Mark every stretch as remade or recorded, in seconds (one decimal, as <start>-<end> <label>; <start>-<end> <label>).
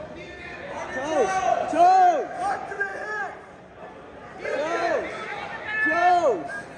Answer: 0.0-2.9 recorded; 2.9-3.7 remade; 3.7-5.3 recorded; 5.3-6.1 remade; 6.1-6.8 recorded